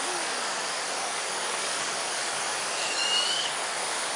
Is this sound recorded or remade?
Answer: remade